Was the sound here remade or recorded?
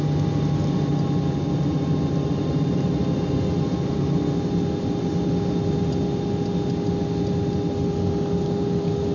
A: recorded